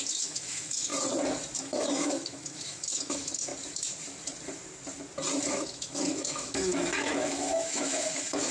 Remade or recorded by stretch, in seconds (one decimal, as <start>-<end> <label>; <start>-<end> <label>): 0.0-0.9 remade; 0.9-1.6 recorded; 1.6-3.5 remade; 3.5-5.4 recorded; 5.4-8.5 remade